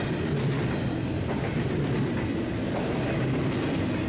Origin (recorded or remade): recorded